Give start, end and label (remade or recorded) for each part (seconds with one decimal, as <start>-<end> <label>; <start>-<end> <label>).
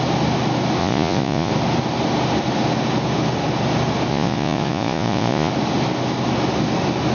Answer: 0.0-0.8 recorded; 0.8-1.5 remade; 1.5-4.1 recorded; 4.1-5.5 remade; 5.5-7.1 recorded